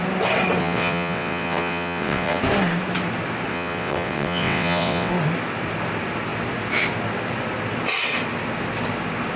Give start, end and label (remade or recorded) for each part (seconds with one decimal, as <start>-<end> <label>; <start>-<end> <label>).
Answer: 0.0-0.6 recorded; 0.6-2.4 remade; 2.4-3.5 recorded; 3.5-5.1 remade; 5.1-9.4 recorded